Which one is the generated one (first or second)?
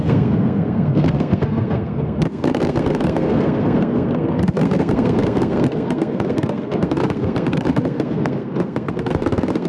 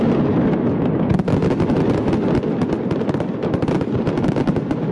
first